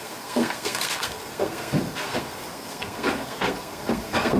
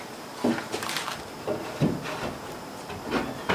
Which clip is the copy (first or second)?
first